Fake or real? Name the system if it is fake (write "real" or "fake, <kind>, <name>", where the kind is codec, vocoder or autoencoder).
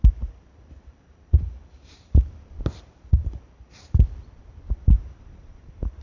fake, vocoder, BigVGAN v2